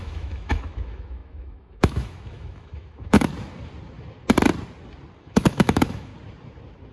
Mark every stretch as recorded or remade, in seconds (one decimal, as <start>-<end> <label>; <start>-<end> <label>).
0.0-3.3 remade; 3.3-5.2 recorded; 5.2-6.1 remade; 6.1-6.9 recorded